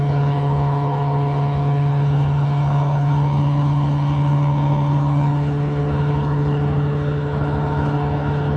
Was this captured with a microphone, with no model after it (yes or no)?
no